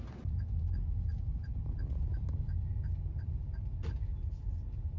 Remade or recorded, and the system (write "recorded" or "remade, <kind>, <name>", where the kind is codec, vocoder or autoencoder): recorded